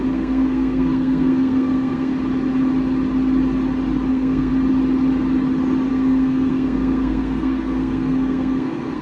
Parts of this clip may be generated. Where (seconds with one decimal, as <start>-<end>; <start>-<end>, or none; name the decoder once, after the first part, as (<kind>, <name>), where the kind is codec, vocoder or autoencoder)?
0.0-2.1 (codec, SNAC); 4.1-4.5; 5.9-9.0